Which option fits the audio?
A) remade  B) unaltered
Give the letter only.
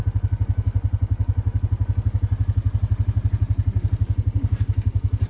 B